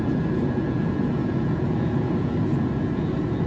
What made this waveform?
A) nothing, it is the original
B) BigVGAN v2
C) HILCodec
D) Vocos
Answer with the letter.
D